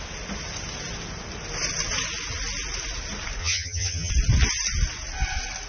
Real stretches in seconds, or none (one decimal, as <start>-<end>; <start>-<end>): 0.0-3.4; 4.1-5.7